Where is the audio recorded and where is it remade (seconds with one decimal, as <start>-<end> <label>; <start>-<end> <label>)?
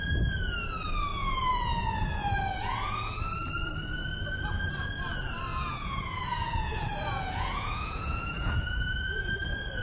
0.0-1.1 recorded; 1.1-3.2 remade; 3.2-5.5 recorded; 5.5-9.3 remade; 9.3-9.8 recorded